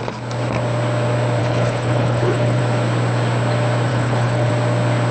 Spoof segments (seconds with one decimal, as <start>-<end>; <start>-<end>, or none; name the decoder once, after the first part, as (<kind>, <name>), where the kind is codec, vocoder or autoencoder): 1.4-2.6 (codec, HILCodec); 3.9-4.5